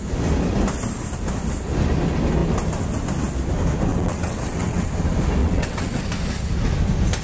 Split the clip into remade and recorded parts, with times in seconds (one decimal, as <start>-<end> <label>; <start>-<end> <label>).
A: 0.0-3.9 recorded; 3.9-4.9 remade; 4.9-5.4 recorded; 5.4-6.0 remade; 6.0-7.2 recorded